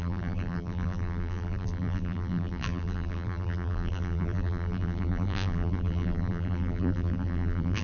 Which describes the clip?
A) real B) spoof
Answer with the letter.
B